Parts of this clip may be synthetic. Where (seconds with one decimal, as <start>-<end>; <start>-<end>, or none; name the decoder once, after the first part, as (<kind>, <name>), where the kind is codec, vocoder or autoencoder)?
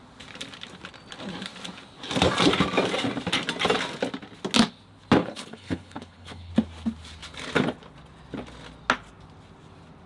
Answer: 5.2-6.5 (codec, HILCodec)